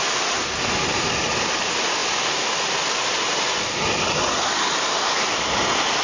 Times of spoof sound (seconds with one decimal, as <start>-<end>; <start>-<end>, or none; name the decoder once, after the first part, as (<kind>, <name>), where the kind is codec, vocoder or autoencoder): 0.0-2.0 (vocoder, BigVGAN v2); 4.7-6.0